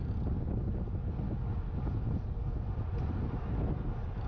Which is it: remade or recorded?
recorded